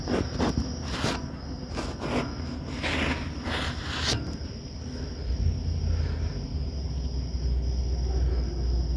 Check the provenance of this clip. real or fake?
real